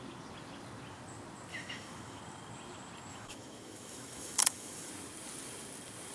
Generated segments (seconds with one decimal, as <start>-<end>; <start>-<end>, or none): 1.5-2.2; 3.1-4.9